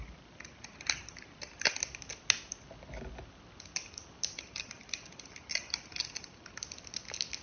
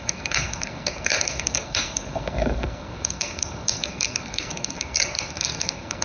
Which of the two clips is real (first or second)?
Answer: first